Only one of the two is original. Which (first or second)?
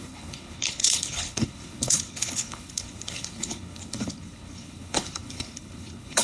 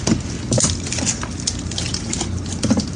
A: second